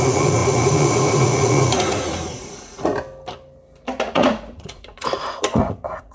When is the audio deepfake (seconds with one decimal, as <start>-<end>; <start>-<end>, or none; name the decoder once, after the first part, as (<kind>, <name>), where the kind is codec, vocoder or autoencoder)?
0.0-2.9 (vocoder, Vocos); 4.1-6.1